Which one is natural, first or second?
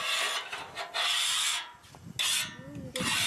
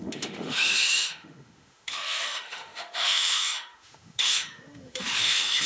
first